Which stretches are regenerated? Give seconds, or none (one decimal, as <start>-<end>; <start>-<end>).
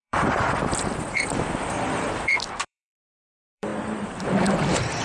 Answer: 0.0-3.7; 4.2-5.0